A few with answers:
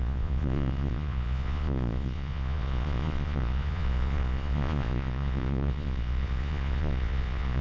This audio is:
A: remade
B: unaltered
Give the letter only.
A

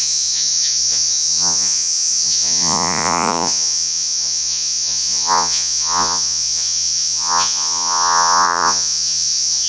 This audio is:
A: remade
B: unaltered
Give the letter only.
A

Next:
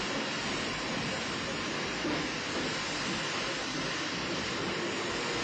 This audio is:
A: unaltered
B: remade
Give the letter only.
A